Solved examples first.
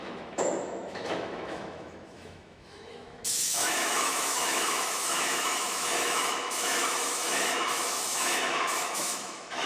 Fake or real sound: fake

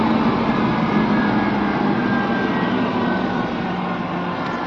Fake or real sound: real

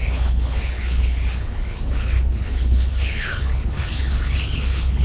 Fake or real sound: fake